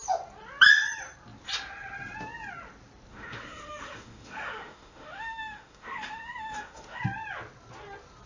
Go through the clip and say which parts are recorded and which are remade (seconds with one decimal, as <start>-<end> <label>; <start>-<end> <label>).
0.0-3.1 recorded; 3.1-7.0 remade; 7.0-8.3 recorded